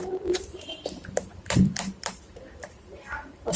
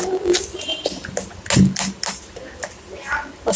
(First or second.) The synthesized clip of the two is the first